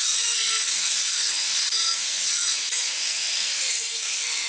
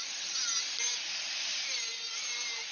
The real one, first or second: second